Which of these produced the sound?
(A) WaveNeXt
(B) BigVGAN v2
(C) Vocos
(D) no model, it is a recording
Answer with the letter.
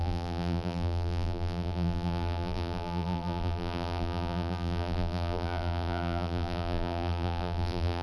B